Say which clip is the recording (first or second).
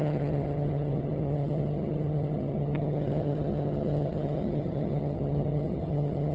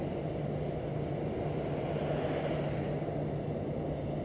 second